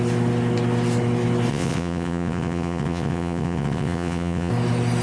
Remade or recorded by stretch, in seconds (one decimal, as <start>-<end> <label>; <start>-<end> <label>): 0.0-1.5 recorded; 1.5-4.5 remade; 4.5-5.0 recorded